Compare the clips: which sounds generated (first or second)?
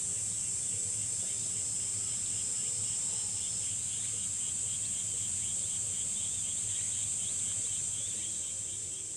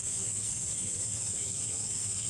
second